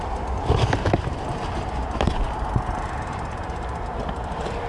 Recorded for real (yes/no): yes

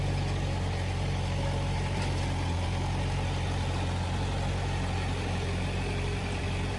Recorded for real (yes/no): no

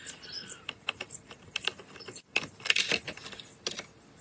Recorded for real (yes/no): yes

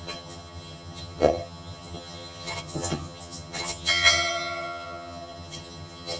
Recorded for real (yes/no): no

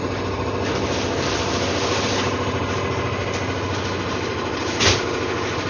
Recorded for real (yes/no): yes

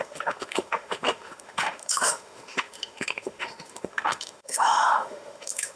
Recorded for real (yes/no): no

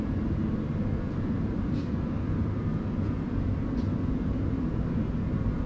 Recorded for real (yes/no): yes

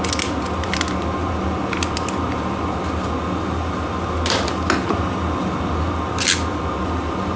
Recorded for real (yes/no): yes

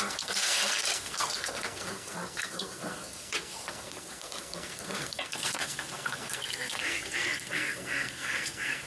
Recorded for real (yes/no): no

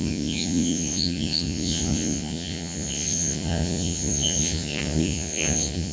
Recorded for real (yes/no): no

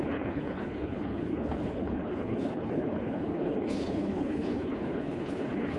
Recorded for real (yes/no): no